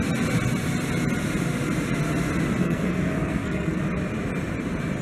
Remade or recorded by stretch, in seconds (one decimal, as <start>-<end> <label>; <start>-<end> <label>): 0.0-2.6 recorded; 2.6-3.8 remade; 3.8-5.0 recorded